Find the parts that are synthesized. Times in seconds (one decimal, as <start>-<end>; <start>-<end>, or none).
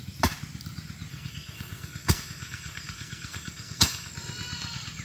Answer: 1.1-4.1